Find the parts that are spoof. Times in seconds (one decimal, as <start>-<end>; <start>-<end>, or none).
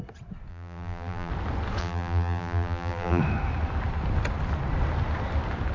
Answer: 0.5-1.3; 1.8-3.2